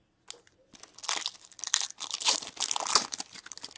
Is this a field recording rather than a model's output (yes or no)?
yes